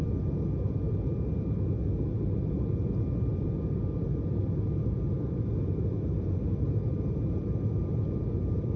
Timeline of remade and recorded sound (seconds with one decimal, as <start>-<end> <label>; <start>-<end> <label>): 0.0-3.3 recorded; 3.3-5.5 remade; 5.5-8.8 recorded